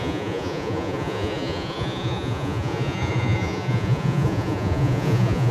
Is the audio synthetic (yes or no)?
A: yes